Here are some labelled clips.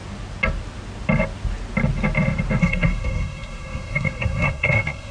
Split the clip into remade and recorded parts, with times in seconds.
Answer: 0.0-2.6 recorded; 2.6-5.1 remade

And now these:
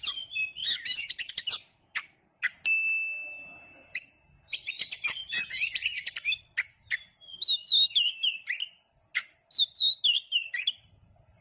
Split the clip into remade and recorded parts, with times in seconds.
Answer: 0.0-11.4 recorded

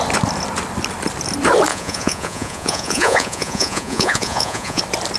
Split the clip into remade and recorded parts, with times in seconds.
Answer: 0.0-1.7 recorded; 1.7-4.8 remade; 4.8-5.2 recorded

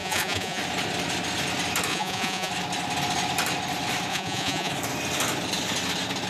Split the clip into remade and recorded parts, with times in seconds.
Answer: 0.0-0.6 remade; 0.6-1.9 recorded; 1.9-2.5 remade; 2.5-4.1 recorded; 4.1-4.7 remade; 4.7-6.3 recorded

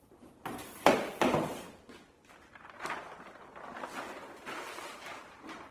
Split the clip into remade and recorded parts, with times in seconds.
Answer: 0.0-5.7 recorded